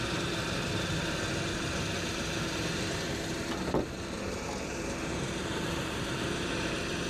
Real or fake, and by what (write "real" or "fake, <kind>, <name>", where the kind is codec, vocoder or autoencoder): fake, vocoder, BigVGAN v2